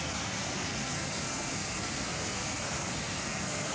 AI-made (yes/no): yes